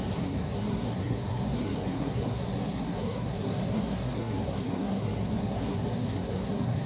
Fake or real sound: fake